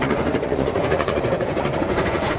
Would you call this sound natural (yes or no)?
no